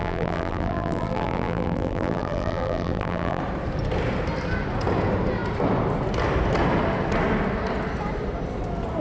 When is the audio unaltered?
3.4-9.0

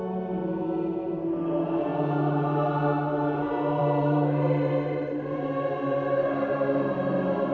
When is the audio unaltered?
1.9-3.8

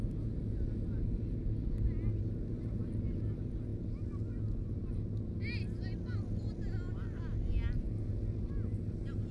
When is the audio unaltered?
0.0-9.3

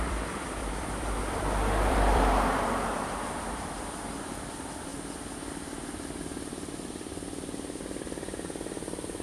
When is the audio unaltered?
4.9-5.5